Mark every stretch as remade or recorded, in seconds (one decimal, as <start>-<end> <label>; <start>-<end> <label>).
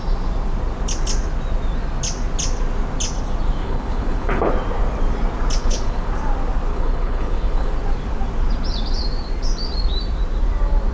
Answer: 0.0-3.6 recorded; 3.6-4.5 remade; 4.5-5.6 recorded; 5.6-6.1 remade; 6.1-6.7 recorded; 6.7-7.7 remade; 7.7-10.9 recorded